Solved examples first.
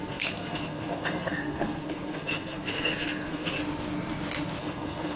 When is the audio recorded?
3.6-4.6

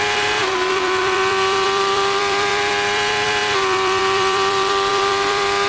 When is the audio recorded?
none